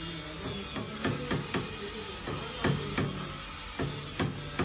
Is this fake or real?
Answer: real